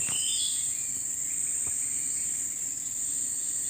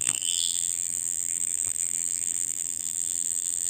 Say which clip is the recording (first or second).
first